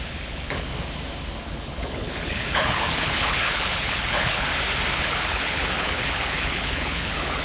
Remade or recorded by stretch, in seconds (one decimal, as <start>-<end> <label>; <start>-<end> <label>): 0.0-0.7 remade; 0.7-1.5 recorded; 1.5-4.5 remade; 4.5-5.0 recorded; 5.0-7.4 remade